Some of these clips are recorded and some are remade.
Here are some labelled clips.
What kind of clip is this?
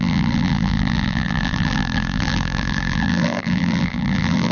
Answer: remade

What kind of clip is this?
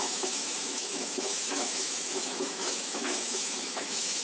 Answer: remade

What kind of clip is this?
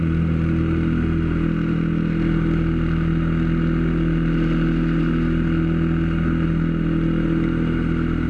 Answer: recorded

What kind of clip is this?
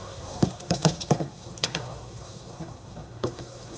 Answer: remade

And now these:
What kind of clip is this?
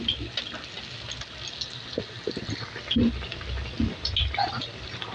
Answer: recorded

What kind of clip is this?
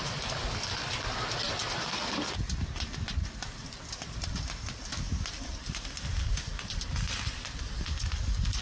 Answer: recorded